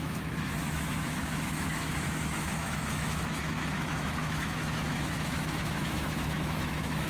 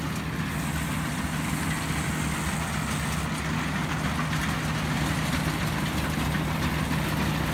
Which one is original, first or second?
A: second